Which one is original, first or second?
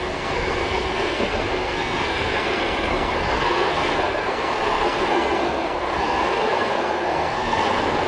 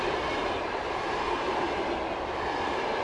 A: second